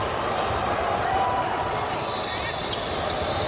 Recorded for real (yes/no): yes